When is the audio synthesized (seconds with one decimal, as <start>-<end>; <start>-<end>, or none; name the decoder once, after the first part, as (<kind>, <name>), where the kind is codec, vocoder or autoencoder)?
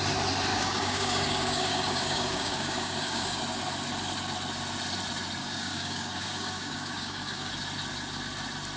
0.5-3.4 (codec, DAC); 5.4-7.5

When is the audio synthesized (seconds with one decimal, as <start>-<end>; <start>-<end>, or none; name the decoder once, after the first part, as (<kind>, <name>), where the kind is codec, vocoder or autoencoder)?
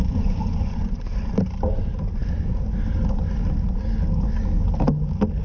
0.0-0.9 (vocoder, Vocos)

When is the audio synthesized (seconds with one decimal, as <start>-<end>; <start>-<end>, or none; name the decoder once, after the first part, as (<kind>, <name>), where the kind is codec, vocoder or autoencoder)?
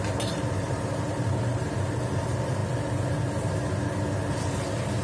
0.0-2.6 (vocoder, BigVGAN v2)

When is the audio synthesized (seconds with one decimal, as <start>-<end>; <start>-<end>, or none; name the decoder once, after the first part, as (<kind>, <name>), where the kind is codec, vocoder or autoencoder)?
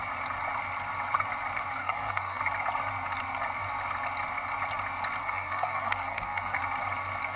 1.8-2.4 (codec, SNAC); 5.2-6.6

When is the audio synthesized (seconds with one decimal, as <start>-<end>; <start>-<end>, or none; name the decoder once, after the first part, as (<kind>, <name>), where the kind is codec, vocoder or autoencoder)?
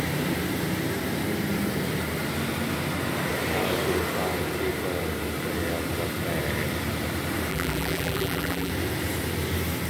7.5-8.7 (vocoder, BigVGAN v2)